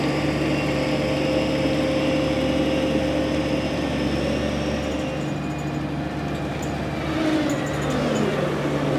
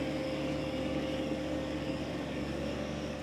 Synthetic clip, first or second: second